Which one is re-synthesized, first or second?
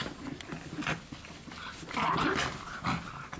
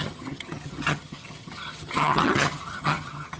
second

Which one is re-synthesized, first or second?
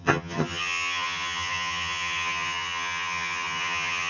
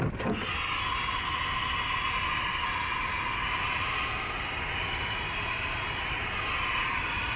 first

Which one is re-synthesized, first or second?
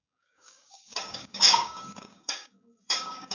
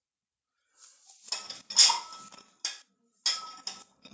first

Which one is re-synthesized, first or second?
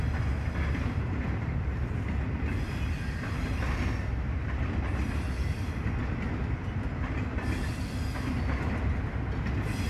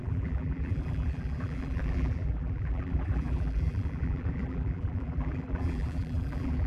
second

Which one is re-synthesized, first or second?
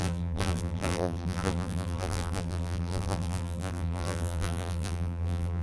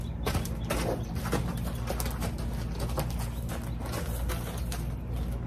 first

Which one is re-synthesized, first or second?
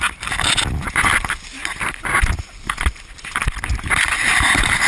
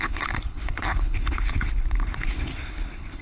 second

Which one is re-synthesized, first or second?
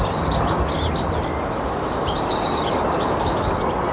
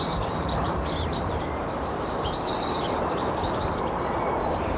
second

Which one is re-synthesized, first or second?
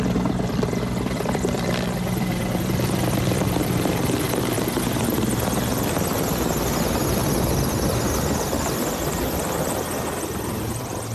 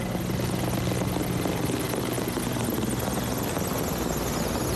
first